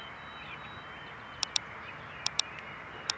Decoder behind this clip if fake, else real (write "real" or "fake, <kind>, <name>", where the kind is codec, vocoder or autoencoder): real